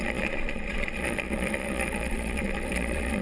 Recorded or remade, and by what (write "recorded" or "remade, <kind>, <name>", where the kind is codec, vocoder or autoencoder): remade, vocoder, Vocos